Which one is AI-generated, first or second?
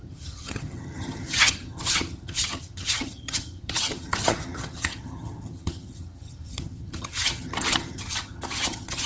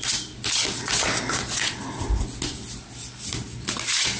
first